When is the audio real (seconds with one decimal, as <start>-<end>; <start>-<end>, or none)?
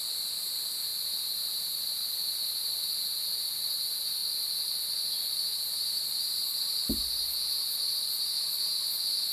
0.0-0.9; 2.4-9.3